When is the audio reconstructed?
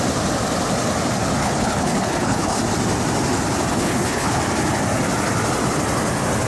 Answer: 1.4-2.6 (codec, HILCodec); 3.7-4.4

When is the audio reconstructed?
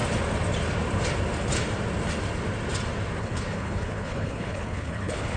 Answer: 3.2-5.4 (codec, HILCodec)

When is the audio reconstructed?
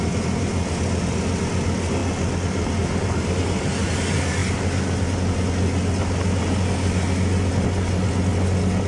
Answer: none